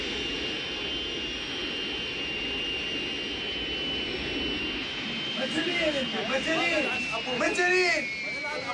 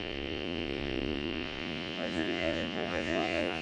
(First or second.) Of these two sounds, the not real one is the second